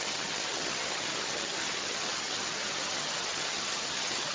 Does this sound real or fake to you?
fake